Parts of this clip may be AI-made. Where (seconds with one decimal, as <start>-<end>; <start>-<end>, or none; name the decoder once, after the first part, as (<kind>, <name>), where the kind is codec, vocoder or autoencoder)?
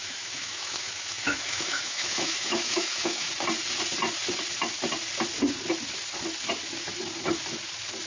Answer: 0.0-3.3 (autoencoder, DAC-VAE)